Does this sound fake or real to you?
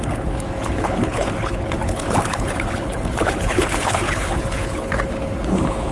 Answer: fake